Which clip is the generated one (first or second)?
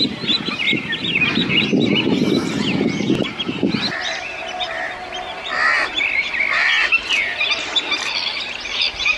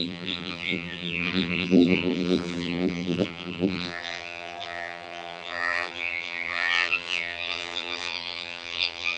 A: second